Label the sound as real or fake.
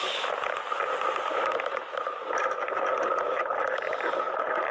real